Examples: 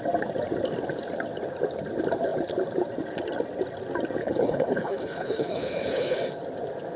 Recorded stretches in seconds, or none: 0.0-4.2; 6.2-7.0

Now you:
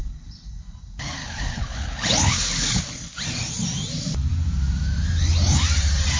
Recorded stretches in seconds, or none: 0.0-1.2; 2.8-6.2

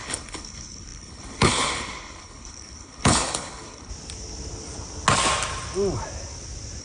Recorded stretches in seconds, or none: 3.9-6.8

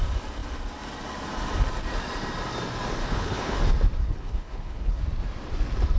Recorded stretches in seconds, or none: 0.0-3.0; 3.6-4.0; 5.0-6.0

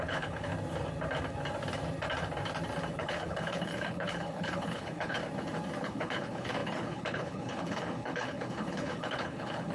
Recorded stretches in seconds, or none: 0.5-2.9; 5.2-5.8